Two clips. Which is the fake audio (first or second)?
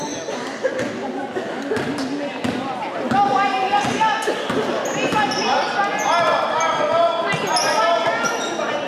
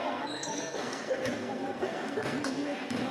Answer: second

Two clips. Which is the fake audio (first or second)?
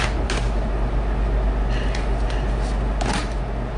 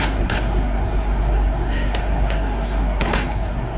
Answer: second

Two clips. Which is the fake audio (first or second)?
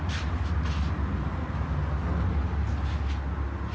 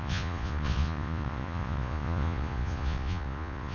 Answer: second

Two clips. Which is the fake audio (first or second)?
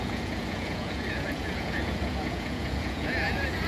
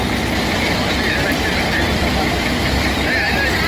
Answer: first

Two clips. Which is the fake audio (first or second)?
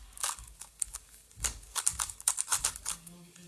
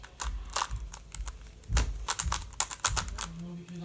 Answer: first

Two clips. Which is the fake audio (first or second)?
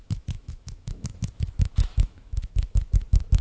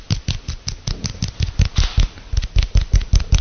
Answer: first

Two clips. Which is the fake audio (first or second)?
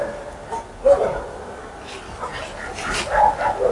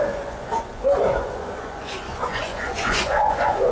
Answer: second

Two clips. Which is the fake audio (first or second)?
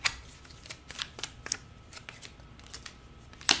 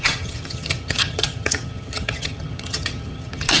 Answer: second